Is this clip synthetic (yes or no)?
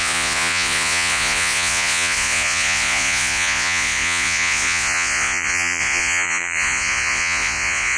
yes